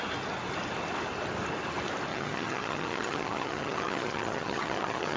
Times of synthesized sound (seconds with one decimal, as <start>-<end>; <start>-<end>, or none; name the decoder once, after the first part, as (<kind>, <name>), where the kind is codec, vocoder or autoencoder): 2.1-5.2 (vocoder, HiFi-GAN)

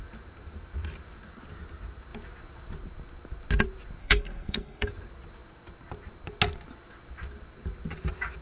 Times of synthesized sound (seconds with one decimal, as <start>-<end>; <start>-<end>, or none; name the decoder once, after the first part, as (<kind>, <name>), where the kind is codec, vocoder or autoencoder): 4.0-4.9 (codec, SNAC)